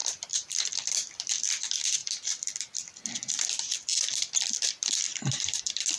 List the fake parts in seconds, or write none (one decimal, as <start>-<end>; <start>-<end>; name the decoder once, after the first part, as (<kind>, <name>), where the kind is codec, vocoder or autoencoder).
0.0-1.5 (vocoder, BigVGAN v2); 2.0-5.6